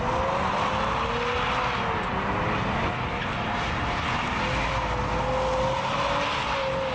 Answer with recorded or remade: recorded